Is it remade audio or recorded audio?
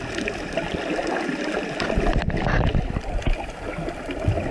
recorded